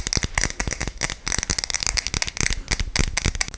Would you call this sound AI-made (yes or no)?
no